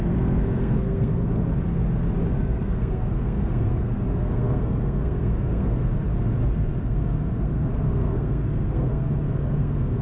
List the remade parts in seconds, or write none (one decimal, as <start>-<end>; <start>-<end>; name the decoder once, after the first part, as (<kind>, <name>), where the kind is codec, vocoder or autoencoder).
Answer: 0.0-1.5 (codec, SNAC); 2.3-5.9; 6.8-10.0